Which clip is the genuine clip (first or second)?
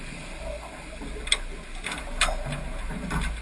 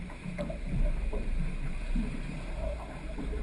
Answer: first